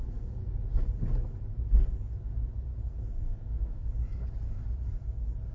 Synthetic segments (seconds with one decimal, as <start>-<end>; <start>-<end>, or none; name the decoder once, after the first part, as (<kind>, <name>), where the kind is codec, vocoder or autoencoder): 0.0-0.5 (codec, SNAC); 2.7-3.9